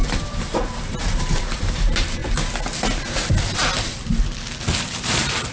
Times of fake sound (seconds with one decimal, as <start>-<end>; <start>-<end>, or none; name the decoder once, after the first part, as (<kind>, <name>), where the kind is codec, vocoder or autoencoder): 0.0-2.2 (vocoder, BigVGAN v2); 4.8-5.5

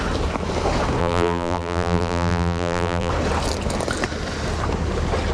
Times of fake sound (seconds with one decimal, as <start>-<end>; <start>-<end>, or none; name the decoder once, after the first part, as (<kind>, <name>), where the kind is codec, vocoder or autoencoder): 1.0-3.1 (vocoder, BigVGAN v2)

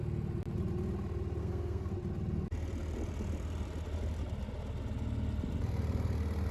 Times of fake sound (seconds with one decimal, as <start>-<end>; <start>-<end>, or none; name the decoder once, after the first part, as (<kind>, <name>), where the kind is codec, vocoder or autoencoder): 1.4-1.9 (codec, SNAC)

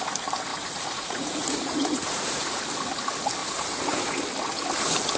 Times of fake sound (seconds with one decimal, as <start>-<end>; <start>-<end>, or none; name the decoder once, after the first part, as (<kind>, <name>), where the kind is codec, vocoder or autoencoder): 0.5-2.6 (vocoder, Vocos); 3.4-4.2

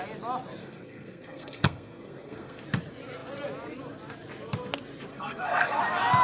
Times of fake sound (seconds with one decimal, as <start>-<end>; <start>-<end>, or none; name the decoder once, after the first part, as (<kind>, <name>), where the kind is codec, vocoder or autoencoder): 0.6-2.6 (codec, SNAC); 5.1-5.8

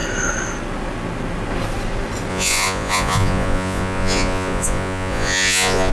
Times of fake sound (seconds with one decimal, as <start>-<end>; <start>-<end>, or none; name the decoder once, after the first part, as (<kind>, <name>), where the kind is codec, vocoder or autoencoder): 2.3-5.9 (vocoder, Vocos)

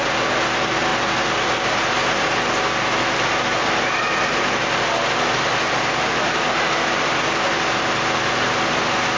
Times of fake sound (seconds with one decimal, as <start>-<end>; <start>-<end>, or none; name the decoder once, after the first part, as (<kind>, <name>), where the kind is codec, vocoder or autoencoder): none